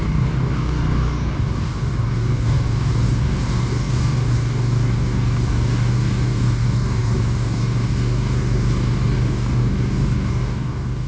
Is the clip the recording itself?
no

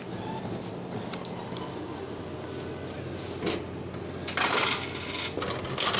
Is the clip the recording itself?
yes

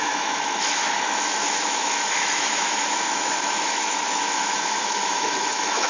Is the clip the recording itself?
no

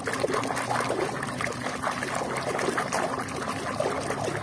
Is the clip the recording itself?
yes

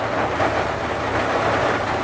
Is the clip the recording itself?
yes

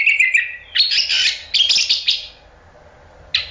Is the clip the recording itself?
yes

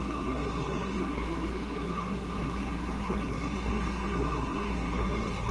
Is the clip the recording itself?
no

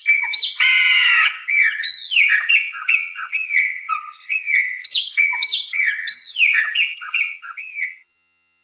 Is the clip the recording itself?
no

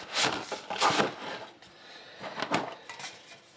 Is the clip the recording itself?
yes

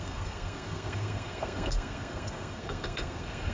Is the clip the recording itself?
no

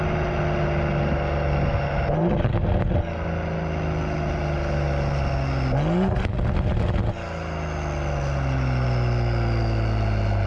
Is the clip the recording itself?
yes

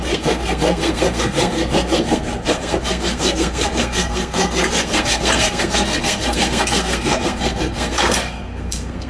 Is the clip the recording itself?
no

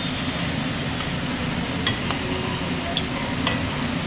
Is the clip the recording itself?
yes